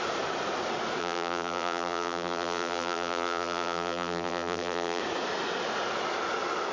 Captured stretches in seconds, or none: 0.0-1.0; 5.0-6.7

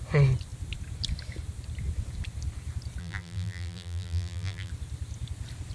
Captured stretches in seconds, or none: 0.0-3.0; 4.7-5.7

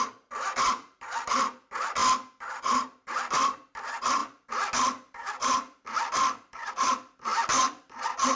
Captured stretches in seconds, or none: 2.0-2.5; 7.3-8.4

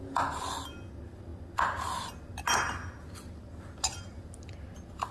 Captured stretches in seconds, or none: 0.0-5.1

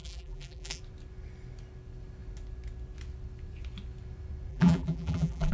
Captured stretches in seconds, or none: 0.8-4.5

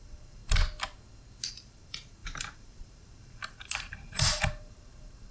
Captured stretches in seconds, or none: 0.4-1.5

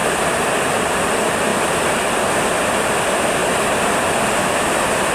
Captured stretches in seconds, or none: none